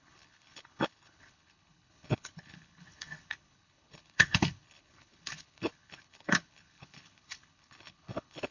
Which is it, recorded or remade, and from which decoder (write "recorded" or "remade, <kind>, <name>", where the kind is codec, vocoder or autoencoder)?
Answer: remade, codec, HILCodec